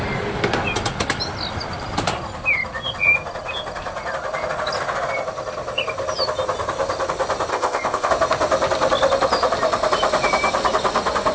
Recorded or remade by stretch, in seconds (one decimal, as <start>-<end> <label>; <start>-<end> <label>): 0.0-7.5 recorded; 7.5-8.1 remade; 8.1-11.3 recorded